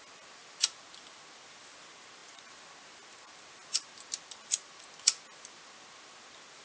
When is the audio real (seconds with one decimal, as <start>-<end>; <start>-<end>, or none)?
0.0-6.6